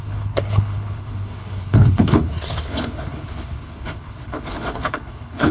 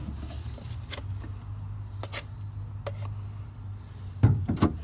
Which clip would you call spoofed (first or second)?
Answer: first